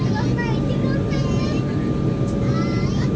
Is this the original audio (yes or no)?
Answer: yes